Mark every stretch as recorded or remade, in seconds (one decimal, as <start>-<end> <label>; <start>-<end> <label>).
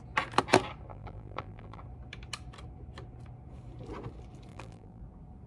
0.0-0.9 recorded; 0.9-1.8 remade; 1.8-4.5 recorded; 4.5-5.0 remade; 5.0-5.5 recorded